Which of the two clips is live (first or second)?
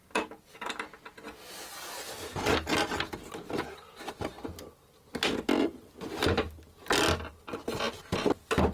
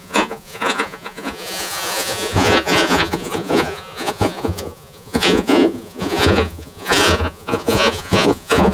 first